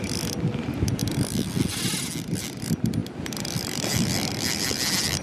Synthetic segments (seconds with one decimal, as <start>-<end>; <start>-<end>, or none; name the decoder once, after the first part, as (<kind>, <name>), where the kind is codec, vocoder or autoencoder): 0.0-1.0 (vocoder, BigVGAN v2); 2.4-5.2